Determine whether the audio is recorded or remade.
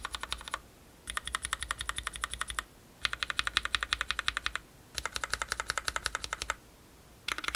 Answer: recorded